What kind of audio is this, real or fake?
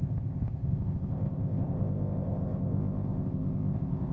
fake